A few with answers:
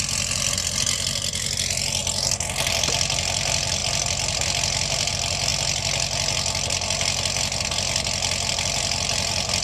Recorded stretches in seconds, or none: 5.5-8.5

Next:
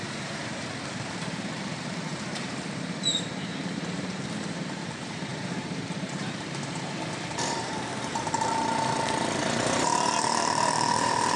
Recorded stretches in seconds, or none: none

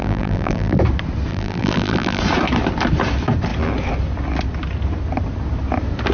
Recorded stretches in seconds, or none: 0.8-1.3; 2.2-6.1